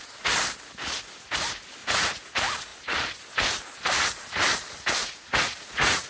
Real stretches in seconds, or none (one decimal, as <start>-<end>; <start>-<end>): 0.0-1.8; 2.3-5.0